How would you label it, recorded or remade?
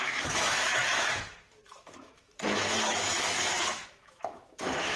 remade